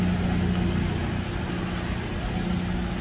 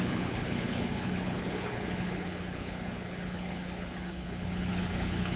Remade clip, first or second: second